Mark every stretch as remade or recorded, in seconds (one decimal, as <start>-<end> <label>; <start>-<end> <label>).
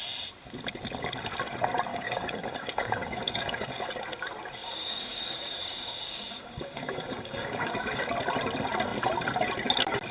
0.0-1.9 recorded; 1.9-3.9 remade; 3.9-4.6 recorded; 4.6-8.0 remade; 8.0-10.1 recorded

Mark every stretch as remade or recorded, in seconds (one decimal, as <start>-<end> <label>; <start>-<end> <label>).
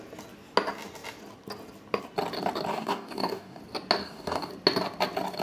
0.0-2.7 recorded; 2.7-3.6 remade; 3.6-4.0 recorded; 4.0-4.5 remade; 4.5-5.4 recorded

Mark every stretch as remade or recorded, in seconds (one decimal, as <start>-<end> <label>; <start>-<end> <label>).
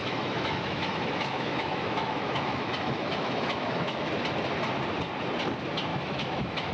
0.0-4.0 remade; 4.0-5.9 recorded; 5.9-6.7 remade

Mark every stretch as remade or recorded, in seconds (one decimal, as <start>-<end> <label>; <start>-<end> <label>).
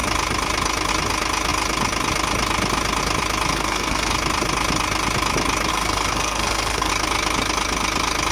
0.0-3.5 recorded; 3.5-4.1 remade; 4.1-5.7 recorded; 5.7-6.9 remade; 6.9-8.3 recorded